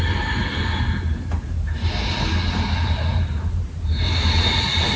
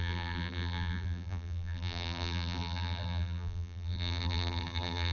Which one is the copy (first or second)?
second